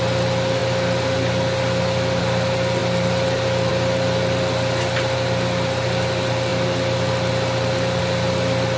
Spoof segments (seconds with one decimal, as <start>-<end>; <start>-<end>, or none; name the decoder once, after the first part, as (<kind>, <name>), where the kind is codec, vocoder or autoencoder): none